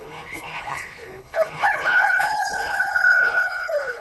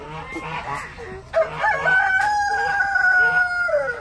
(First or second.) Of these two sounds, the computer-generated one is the first